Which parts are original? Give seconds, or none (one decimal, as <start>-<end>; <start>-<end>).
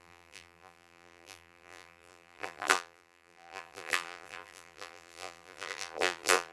none